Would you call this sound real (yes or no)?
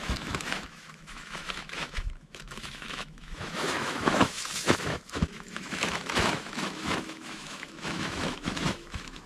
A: no